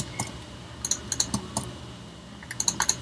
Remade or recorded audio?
recorded